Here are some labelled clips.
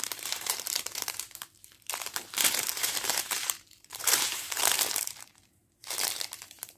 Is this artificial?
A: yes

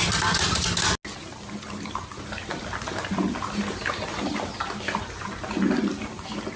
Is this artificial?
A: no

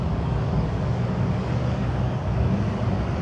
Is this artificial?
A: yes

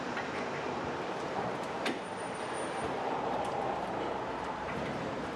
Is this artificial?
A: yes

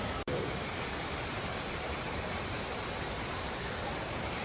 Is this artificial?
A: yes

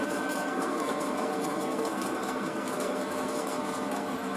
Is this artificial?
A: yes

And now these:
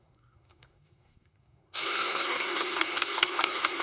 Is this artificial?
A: yes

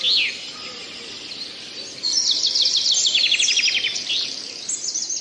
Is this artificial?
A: no